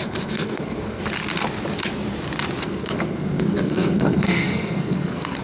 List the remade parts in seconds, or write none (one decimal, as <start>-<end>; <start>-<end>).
0.0-1.0; 2.6-5.4